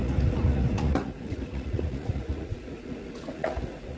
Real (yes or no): no